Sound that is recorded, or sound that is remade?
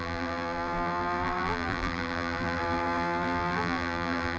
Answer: remade